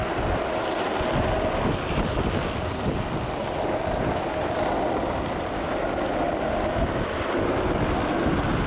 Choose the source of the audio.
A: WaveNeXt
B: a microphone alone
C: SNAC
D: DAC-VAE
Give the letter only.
B